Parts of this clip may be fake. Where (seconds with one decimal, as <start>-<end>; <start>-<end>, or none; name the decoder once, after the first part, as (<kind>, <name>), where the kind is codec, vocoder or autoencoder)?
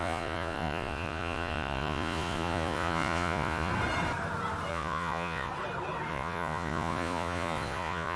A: 0.0-3.7 (vocoder, Vocos); 4.7-5.5; 6.1-8.2